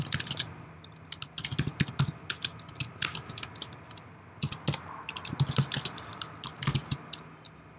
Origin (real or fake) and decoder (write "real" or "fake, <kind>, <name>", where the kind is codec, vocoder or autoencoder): real